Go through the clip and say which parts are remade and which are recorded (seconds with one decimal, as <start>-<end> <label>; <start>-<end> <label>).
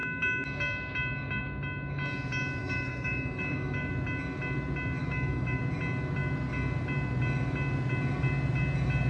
0.0-2.6 recorded; 2.6-3.9 remade; 3.9-5.0 recorded; 5.0-5.6 remade; 5.6-9.1 recorded